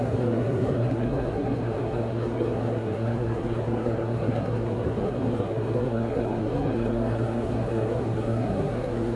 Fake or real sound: fake